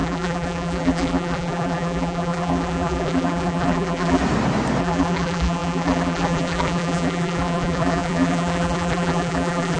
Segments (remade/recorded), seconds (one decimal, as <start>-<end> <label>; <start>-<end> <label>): 0.0-4.2 remade; 4.2-4.8 recorded; 4.8-9.8 remade